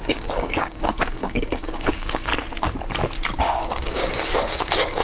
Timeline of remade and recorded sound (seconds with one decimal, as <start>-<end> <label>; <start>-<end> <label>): 0.0-2.3 remade; 2.3-3.4 recorded; 3.4-5.0 remade